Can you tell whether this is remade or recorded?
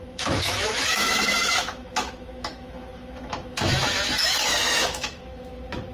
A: remade